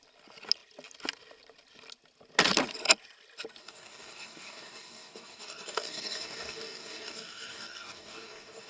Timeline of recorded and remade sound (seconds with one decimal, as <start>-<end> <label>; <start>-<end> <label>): 0.0-3.6 recorded; 3.6-8.7 remade